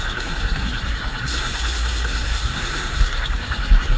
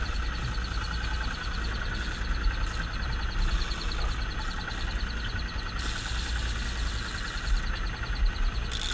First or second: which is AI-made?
first